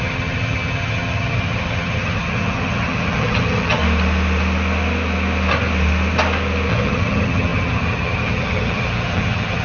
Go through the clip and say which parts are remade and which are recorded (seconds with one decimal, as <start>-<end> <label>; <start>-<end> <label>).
0.0-3.8 remade; 3.8-6.7 recorded; 6.7-9.6 remade